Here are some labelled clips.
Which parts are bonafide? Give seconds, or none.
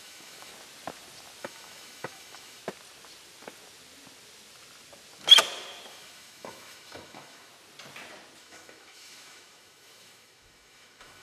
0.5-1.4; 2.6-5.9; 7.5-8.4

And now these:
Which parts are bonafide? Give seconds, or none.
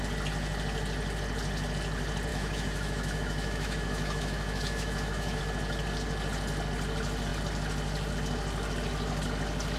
0.0-2.3; 5.4-9.8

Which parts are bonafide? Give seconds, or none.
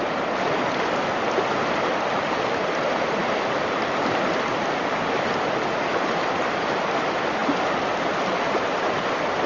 0.0-9.5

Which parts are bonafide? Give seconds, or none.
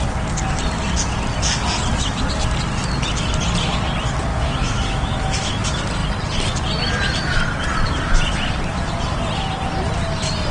0.0-4.3; 5.5-10.5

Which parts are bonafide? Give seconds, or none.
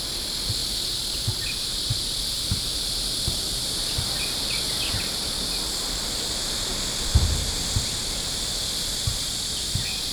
0.0-10.1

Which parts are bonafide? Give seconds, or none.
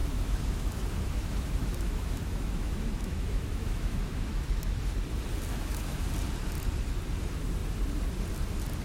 4.9-5.5; 6.1-8.8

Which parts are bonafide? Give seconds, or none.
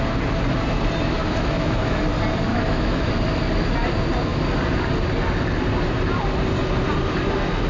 0.0-1.2; 2.0-2.5; 3.1-7.7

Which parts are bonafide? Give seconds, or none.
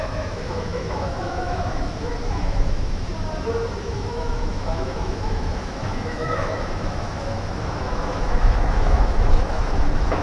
3.1-3.8